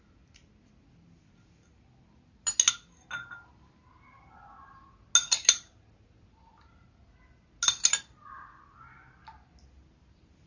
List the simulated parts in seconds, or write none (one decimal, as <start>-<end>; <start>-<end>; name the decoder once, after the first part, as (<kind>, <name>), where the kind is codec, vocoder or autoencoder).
none